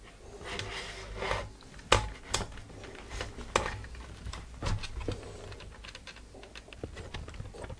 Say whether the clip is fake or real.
real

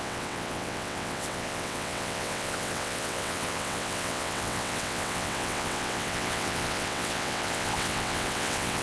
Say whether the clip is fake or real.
fake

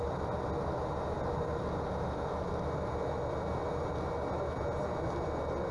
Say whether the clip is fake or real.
real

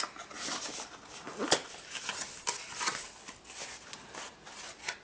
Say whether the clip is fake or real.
real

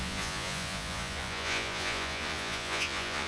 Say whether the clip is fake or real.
fake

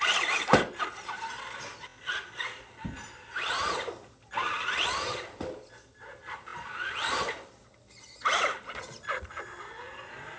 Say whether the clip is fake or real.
real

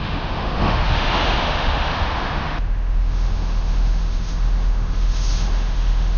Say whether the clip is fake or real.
fake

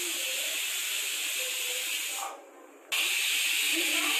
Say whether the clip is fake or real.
real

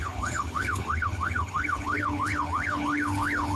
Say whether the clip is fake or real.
fake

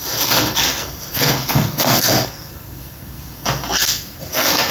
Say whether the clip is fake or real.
fake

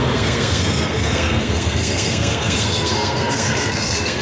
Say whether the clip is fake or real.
fake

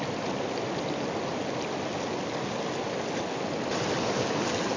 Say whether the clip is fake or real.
real